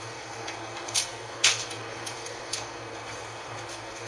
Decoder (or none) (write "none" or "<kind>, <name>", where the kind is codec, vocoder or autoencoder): codec, SNAC